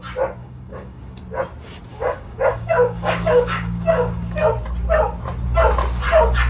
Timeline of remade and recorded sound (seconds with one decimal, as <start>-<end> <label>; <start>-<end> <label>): 0.0-0.4 recorded; 0.4-1.1 remade; 1.1-1.9 recorded; 1.9-4.4 remade; 4.4-6.5 recorded